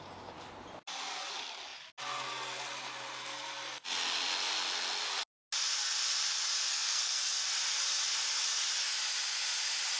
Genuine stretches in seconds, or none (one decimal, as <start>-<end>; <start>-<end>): 0.0-6.7; 7.3-10.0